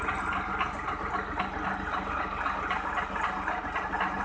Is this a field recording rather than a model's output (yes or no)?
yes